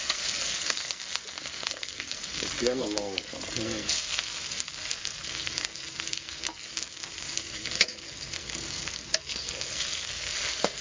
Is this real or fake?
fake